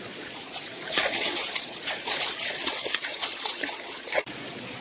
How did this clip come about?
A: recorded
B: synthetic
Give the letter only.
B